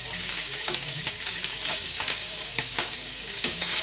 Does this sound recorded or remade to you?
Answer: remade